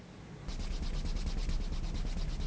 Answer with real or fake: real